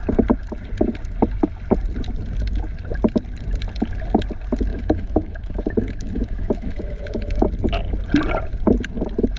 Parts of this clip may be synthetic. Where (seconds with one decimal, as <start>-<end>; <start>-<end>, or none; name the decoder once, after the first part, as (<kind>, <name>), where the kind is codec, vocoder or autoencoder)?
4.7-7.5 (autoencoder, DAC-VAE)